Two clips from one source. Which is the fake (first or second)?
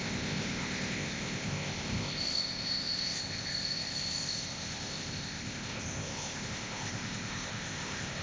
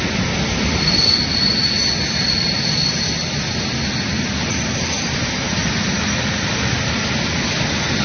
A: first